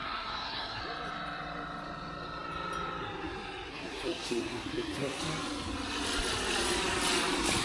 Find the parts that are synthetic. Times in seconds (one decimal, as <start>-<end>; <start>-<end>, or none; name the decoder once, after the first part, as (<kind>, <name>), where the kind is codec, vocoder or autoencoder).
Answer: 0.0-0.8 (codec, SNAC); 3.7-5.2